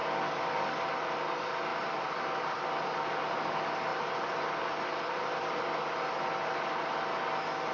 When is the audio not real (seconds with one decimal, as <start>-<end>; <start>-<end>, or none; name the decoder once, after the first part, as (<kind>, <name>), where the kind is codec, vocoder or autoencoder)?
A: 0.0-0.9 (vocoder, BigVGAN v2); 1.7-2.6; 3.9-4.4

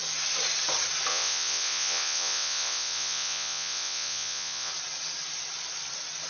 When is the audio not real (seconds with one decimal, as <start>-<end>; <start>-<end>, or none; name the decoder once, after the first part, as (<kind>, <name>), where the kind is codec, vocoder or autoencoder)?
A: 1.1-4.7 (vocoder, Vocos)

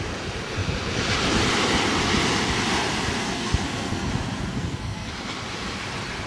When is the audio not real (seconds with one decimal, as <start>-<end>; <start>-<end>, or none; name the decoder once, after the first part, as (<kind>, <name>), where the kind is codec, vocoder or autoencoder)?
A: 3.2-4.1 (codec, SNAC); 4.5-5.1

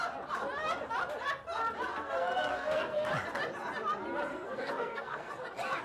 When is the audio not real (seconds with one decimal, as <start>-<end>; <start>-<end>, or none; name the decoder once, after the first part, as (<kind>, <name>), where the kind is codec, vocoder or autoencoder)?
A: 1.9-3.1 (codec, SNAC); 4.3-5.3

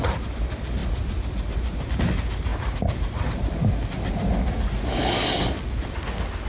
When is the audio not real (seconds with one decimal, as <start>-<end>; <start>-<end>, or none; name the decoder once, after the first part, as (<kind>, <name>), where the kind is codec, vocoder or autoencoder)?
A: none

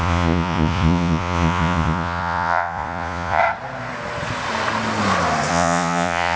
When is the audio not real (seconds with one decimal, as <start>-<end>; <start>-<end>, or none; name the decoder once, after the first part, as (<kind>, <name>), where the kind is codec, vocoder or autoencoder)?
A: 0.0-3.4 (vocoder, Vocos); 5.5-6.4